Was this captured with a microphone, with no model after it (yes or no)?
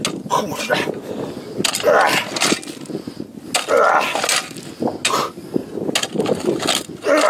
yes